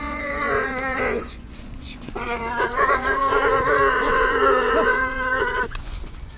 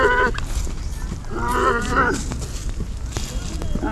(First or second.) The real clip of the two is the second